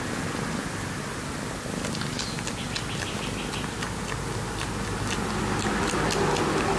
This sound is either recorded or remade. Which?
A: recorded